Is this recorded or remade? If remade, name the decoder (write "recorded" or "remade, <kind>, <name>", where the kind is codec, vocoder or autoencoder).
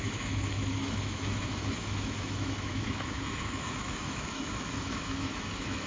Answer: remade, autoencoder, DAC-VAE